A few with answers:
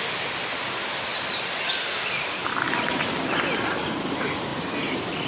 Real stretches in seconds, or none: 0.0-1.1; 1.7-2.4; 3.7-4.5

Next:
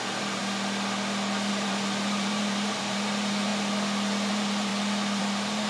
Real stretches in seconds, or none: 0.4-1.5; 3.5-4.3; 4.7-5.2

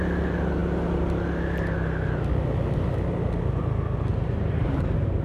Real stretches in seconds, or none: 0.0-4.1; 4.7-5.2